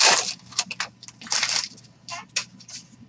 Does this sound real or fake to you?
real